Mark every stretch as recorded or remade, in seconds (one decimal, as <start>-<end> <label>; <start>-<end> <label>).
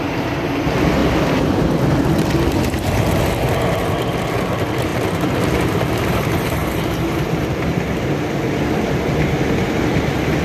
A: 0.0-6.6 recorded; 6.6-8.4 remade; 8.4-10.4 recorded